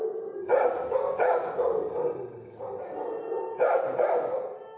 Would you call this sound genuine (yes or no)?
yes